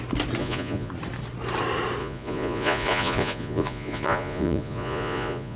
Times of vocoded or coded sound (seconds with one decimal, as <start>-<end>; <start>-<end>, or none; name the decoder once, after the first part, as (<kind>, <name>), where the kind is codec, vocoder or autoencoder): 0.4-0.9 (vocoder, Vocos); 2.0-5.6